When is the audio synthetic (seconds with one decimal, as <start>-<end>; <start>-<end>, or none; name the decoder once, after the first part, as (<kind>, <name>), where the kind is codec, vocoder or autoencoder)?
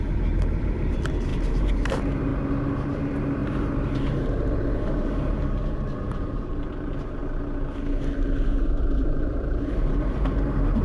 0.0-2.3 (vocoder, BigVGAN v2); 2.9-7.2; 8.8-10.8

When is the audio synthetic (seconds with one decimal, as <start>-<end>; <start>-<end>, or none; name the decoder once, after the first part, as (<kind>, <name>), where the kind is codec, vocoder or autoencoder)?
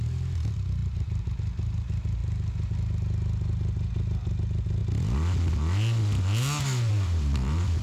0.8-1.3 (vocoder, BigVGAN v2); 6.9-7.8